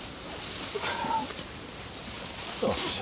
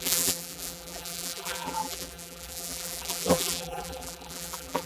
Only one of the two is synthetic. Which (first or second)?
second